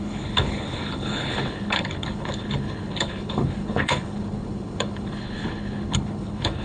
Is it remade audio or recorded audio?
remade